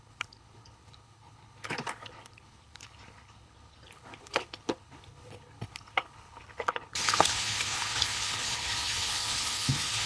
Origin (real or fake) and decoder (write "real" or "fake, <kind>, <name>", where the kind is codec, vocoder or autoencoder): fake, codec, HILCodec